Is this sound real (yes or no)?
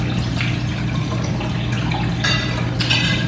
yes